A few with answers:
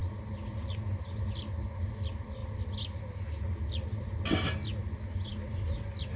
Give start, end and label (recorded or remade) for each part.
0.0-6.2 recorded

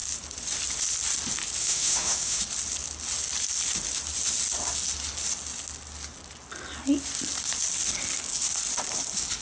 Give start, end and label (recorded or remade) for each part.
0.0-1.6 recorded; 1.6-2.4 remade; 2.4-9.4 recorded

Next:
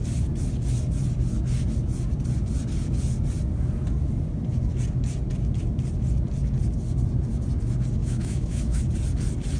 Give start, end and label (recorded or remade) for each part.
0.0-8.0 recorded; 8.0-8.8 remade; 8.8-9.6 recorded

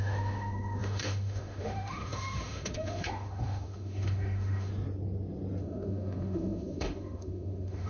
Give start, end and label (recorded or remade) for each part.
0.0-4.7 remade; 4.7-5.6 recorded; 5.6-7.9 remade

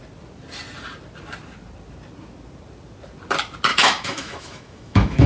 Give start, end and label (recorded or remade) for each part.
0.0-3.7 recorded; 3.7-5.3 remade

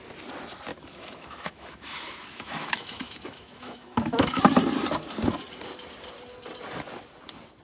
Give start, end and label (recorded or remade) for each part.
0.0-0.7 recorded; 0.7-4.4 remade; 4.4-7.6 recorded

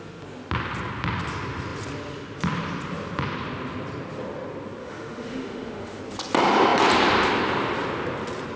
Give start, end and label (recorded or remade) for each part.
0.0-4.8 recorded; 4.8-6.0 remade; 6.0-8.6 recorded